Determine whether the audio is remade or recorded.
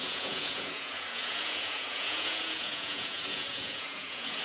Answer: remade